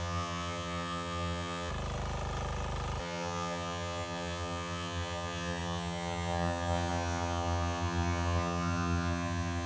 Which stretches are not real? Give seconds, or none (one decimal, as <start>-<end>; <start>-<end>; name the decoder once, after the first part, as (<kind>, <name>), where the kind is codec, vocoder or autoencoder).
0.0-1.7 (vocoder, HiFi-GAN); 3.0-9.7